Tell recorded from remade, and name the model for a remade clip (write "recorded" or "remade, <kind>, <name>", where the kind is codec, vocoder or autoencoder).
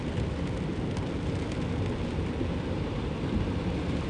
recorded